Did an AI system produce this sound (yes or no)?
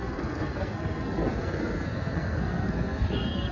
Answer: yes